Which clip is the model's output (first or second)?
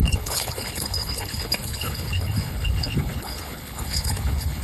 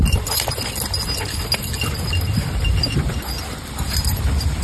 first